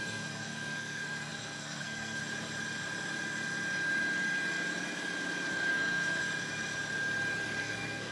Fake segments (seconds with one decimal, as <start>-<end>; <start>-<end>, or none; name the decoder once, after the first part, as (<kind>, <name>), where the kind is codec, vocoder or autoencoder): 0.0-2.2 (codec, SNAC); 5.7-6.2; 7.6-8.1